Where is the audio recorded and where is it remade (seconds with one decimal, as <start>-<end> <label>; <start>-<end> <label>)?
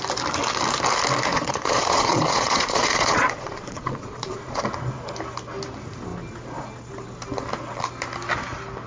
0.0-1.3 recorded; 1.3-4.6 remade; 4.6-8.9 recorded